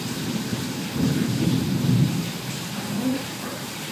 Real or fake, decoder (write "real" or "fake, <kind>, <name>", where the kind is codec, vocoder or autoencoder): fake, vocoder, BigVGAN v2